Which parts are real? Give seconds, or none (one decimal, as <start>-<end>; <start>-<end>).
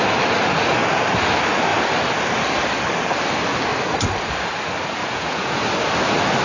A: 0.0-5.0; 5.6-6.4